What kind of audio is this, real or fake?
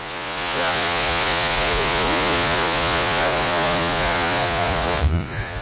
fake